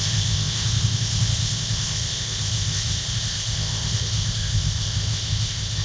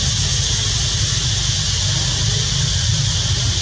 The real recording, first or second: second